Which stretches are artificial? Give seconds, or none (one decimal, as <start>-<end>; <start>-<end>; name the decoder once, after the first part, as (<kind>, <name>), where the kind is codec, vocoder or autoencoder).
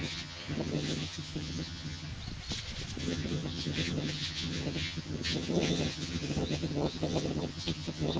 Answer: 0.0-2.1 (vocoder, HiFi-GAN); 3.0-8.2